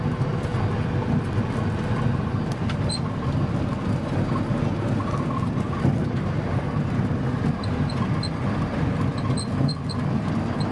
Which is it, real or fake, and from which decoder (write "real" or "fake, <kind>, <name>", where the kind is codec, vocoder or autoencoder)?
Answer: real